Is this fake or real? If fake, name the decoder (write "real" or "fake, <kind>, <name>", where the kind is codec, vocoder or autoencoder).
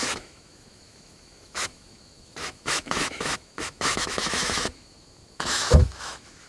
fake, autoencoder, DAC-VAE